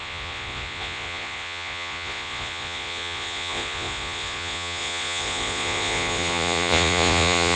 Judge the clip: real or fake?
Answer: fake